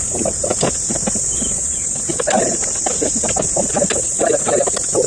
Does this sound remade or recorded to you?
recorded